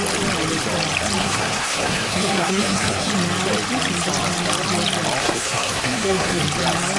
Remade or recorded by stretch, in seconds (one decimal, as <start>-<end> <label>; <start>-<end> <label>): 0.0-1.2 recorded; 1.2-3.1 remade; 3.1-5.2 recorded; 5.2-6.4 remade; 6.4-7.0 recorded